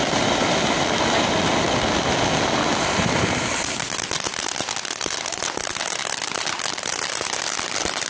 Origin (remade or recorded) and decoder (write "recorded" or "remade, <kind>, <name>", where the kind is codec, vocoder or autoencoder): recorded